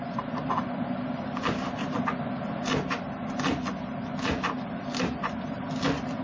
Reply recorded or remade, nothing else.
recorded